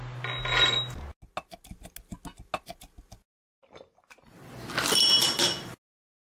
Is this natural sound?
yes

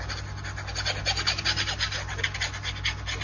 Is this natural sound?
yes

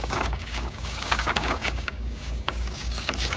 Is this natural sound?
no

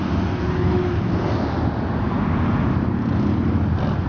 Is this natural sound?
yes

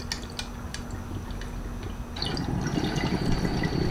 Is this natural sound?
yes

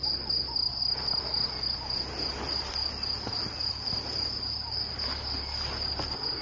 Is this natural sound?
yes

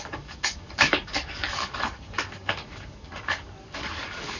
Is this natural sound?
no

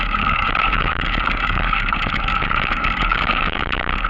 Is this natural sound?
no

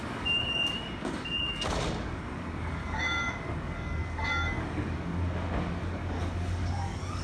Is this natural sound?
no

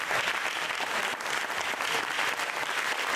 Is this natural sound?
yes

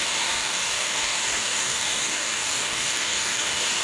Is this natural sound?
no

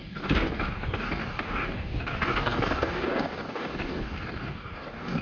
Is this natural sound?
no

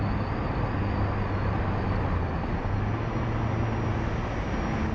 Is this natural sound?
yes